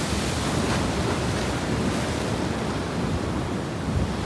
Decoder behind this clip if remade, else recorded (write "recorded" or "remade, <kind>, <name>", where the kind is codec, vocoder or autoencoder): recorded